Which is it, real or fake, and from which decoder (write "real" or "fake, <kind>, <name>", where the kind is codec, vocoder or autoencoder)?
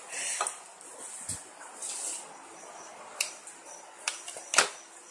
real